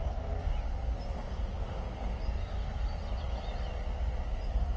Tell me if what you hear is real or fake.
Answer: real